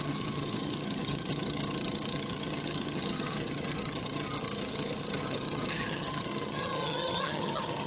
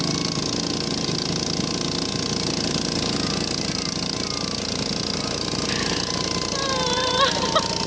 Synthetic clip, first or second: first